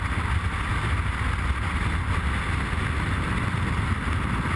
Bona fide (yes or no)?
yes